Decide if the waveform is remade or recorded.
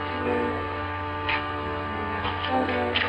remade